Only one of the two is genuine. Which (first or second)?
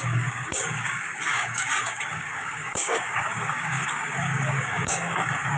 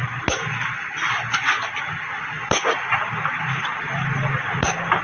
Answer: second